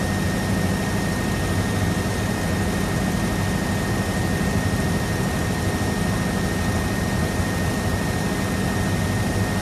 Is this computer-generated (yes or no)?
no